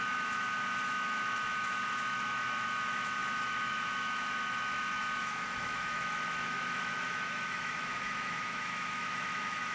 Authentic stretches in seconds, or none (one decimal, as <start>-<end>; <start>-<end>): none